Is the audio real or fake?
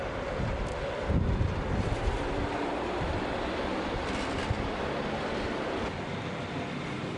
real